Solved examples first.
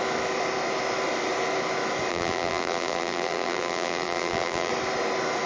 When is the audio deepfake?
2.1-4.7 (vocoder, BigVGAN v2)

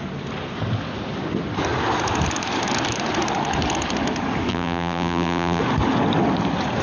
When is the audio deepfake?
4.5-5.6 (vocoder, BigVGAN v2)

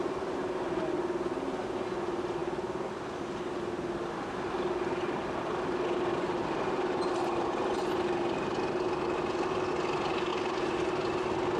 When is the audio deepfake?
none

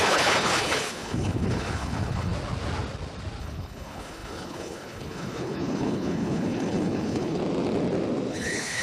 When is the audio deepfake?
0.0-2.3 (codec, HILCodec); 3.4-7.4; 8.3-8.8